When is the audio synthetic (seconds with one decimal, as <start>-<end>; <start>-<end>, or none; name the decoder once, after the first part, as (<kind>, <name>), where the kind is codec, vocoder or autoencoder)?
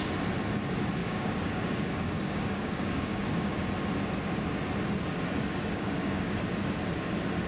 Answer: 1.0-3.5 (codec, DAC); 5.4-6.4